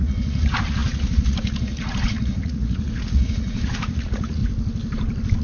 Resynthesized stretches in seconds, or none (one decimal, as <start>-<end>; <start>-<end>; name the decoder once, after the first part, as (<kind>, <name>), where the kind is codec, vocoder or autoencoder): 0.0-4.4 (vocoder, Vocos)